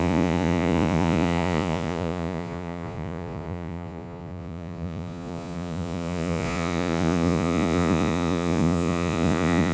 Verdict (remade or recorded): remade